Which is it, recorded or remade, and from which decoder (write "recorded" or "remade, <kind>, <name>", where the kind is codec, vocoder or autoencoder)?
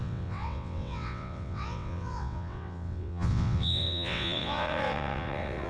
remade, vocoder, WaveNeXt